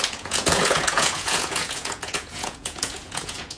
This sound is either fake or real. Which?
fake